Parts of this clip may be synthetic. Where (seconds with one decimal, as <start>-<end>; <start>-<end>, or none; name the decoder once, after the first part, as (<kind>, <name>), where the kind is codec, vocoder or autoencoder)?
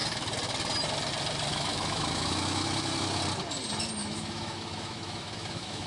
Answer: 1.5-3.2 (autoencoder, DAC-VAE); 4.0-5.9